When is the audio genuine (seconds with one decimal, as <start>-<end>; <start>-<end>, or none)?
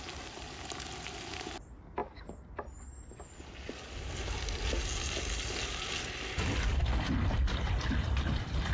0.0-8.7